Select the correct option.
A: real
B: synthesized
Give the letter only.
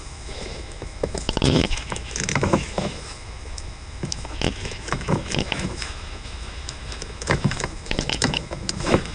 B